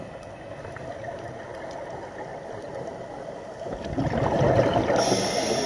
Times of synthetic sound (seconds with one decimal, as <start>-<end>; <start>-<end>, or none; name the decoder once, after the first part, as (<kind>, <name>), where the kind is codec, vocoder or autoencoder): none